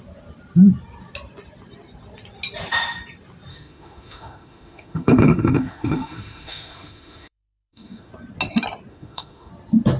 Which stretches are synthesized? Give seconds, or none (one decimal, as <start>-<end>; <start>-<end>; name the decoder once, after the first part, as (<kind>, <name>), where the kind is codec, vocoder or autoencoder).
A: 3.5-8.1 (autoencoder, DAC-VAE); 8.9-9.5